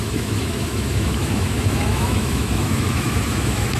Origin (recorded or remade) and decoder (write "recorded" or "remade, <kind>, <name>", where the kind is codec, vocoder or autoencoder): remade, autoencoder, DAC-VAE